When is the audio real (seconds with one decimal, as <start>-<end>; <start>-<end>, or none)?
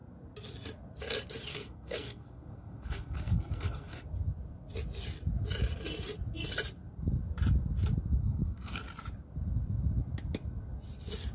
0.0-1.5; 4.0-8.2; 8.8-11.3